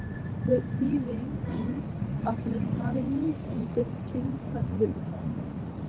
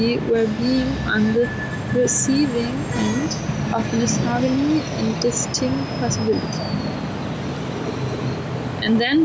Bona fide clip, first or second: second